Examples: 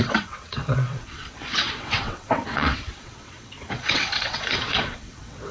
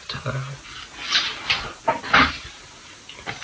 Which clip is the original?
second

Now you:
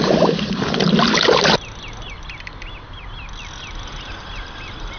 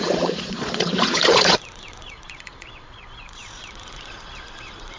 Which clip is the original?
first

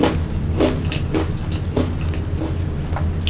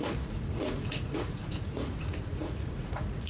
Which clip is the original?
first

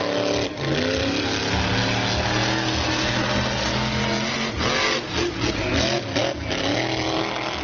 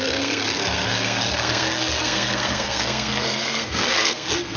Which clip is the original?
first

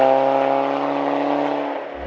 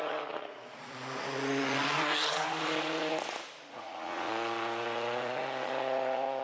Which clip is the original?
first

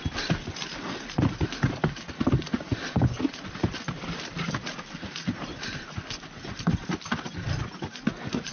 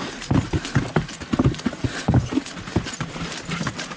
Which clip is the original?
second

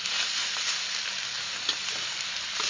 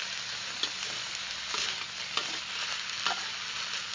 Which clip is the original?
second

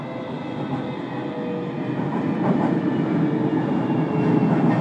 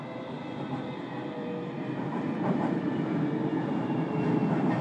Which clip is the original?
first